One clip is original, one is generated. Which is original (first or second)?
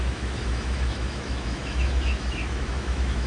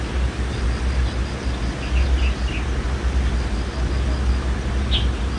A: second